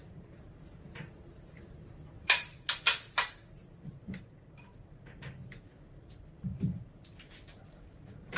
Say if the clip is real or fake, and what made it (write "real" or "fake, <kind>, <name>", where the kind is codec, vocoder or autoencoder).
fake, vocoder, BigVGAN v2